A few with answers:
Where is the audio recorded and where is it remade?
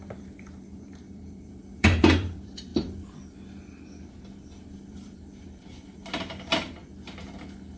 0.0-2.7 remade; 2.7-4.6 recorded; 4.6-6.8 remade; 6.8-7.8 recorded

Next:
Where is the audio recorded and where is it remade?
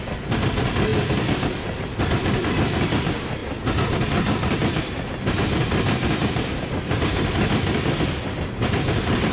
0.0-3.4 remade; 3.4-4.8 recorded; 4.8-9.3 remade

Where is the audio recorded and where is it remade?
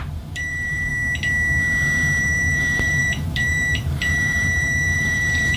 0.0-0.9 remade; 0.9-2.2 recorded; 2.2-5.6 remade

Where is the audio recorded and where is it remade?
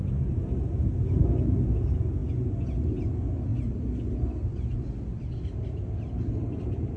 0.0-7.0 recorded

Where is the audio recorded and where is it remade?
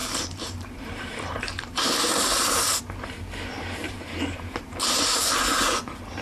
0.0-2.8 remade; 2.8-3.8 recorded; 3.8-5.8 remade; 5.8-6.2 recorded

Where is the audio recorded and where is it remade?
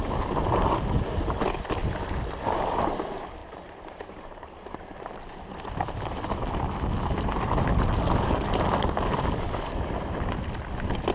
0.0-3.4 recorded; 3.4-6.0 remade; 6.0-11.1 recorded